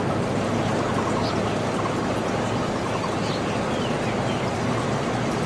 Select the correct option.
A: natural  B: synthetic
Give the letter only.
A